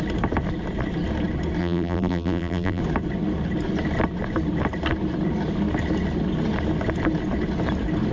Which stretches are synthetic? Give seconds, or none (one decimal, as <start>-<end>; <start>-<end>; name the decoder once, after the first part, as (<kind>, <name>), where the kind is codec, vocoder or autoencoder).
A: 1.6-2.8 (vocoder, BigVGAN v2)